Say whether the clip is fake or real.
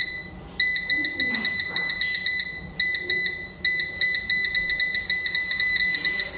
real